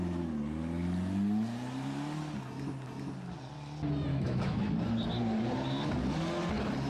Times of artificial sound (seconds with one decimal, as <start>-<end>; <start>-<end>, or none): 4.1-4.7